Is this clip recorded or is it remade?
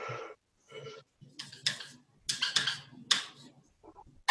recorded